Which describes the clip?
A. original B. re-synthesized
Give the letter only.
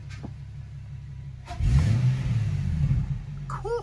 A